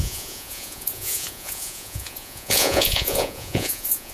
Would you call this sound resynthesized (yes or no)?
yes